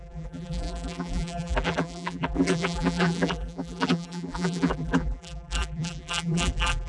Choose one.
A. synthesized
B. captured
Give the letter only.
A